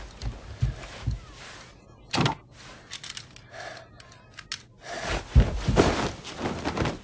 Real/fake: real